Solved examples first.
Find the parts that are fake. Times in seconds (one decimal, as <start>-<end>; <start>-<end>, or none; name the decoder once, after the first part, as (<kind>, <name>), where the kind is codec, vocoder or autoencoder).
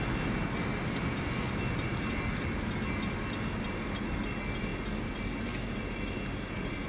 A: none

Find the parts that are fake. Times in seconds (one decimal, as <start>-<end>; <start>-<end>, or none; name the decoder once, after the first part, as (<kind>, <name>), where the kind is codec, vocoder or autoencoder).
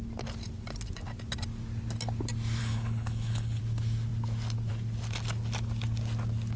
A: 2.6-3.6 (codec, HILCodec)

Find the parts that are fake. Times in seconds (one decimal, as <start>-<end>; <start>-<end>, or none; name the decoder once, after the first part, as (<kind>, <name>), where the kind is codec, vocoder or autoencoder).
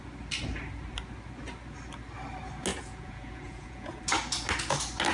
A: 2.7-4.0 (vocoder, Vocos)